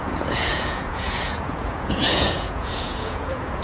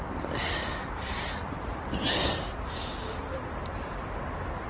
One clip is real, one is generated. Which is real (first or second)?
second